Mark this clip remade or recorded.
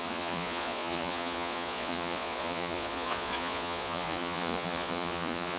remade